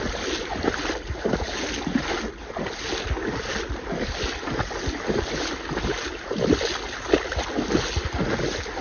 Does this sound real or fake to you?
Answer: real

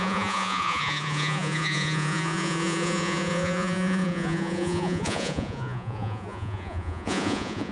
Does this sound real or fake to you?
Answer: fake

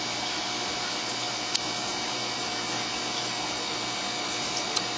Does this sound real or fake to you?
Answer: real